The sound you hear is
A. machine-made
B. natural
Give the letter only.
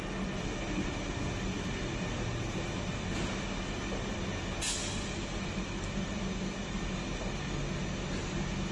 B